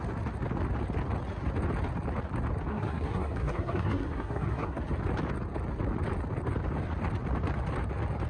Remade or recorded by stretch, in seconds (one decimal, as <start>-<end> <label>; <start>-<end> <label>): 0.0-2.7 recorded; 2.7-4.8 remade; 4.8-8.3 recorded